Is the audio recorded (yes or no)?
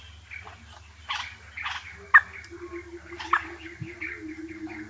yes